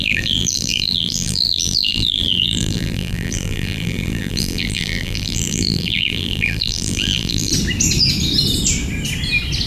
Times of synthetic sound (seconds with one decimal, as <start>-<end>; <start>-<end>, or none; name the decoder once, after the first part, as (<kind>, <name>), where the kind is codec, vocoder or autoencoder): 0.0-7.5 (vocoder, BigVGAN v2)